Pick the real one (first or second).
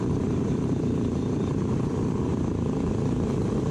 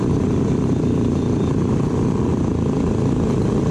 second